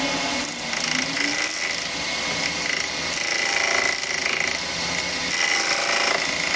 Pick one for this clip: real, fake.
real